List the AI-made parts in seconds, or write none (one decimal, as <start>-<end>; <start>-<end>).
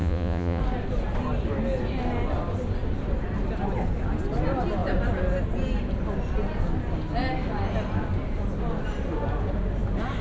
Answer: 0.0-0.6